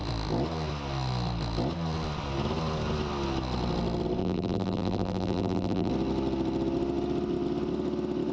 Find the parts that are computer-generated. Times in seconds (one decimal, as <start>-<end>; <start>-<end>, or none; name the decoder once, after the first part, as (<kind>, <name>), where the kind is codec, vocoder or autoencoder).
4.2-5.9 (vocoder, BigVGAN v2)